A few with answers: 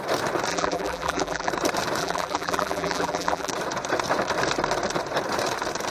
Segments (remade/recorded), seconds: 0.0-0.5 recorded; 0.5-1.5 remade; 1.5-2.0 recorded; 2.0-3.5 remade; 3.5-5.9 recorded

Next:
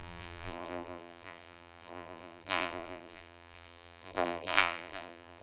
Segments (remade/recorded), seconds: 0.0-5.4 remade

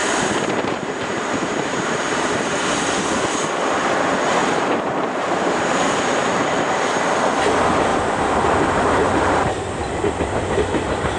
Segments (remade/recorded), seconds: 0.0-2.5 remade; 2.5-4.4 recorded; 4.4-6.4 remade; 6.4-7.9 recorded; 7.9-9.6 remade; 9.6-11.2 recorded

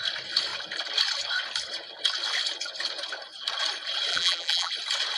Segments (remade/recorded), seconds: 0.0-4.1 recorded; 4.1-4.7 remade; 4.7-5.2 recorded

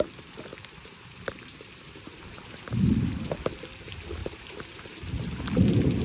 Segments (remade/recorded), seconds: 0.0-0.5 recorded; 0.5-2.6 remade; 2.6-4.2 recorded; 4.2-4.9 remade; 4.9-6.0 recorded

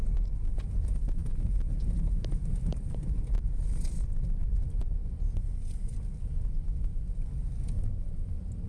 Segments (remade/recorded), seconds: 0.0-1.2 recorded; 1.2-6.2 remade; 6.2-6.9 recorded; 6.9-7.5 remade; 7.5-8.7 recorded

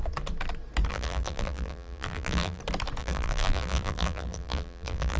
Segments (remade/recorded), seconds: 0.0-0.9 recorded; 0.9-2.6 remade; 2.6-3.0 recorded; 3.0-5.2 remade